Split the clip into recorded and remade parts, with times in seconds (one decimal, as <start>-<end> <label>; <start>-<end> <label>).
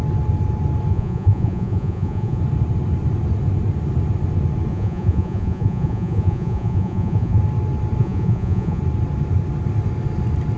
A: 0.0-0.9 recorded; 0.9-2.4 remade; 2.4-4.7 recorded; 4.7-7.4 remade; 7.4-8.0 recorded; 8.0-8.8 remade; 8.8-10.6 recorded